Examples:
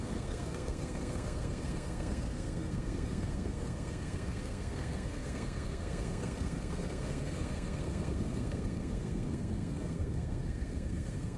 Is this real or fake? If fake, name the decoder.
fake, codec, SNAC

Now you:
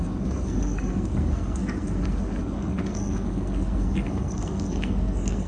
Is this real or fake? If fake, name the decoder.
fake, codec, SNAC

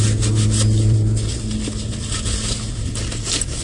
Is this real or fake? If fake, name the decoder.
real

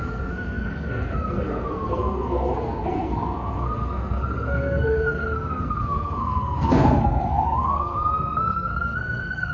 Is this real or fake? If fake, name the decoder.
fake, codec, SNAC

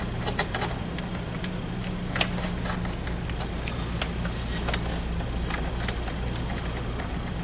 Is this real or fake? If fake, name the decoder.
real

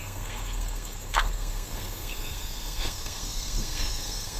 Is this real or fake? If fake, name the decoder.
fake, codec, SNAC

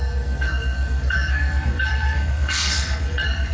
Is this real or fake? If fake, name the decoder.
fake, codec, SNAC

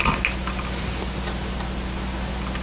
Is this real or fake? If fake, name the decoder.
real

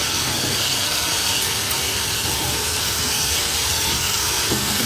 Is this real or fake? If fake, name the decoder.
fake, codec, SNAC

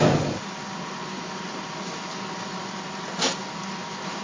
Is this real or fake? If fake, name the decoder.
real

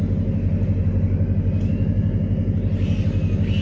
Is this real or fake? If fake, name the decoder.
real